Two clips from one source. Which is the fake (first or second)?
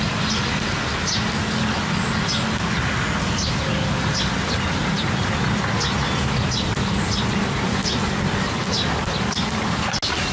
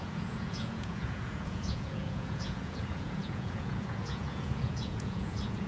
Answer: second